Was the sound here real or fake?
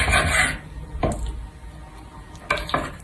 real